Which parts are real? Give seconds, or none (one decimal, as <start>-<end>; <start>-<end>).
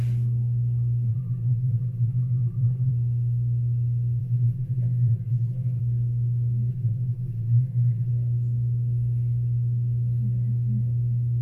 0.0-1.1; 2.9-4.2; 5.8-6.7; 8.1-11.4